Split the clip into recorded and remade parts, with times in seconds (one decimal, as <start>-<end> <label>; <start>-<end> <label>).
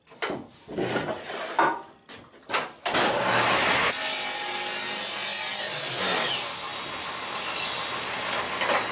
0.0-8.9 recorded